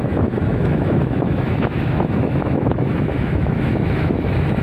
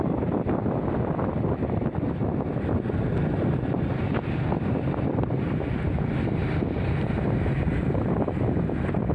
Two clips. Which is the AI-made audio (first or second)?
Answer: first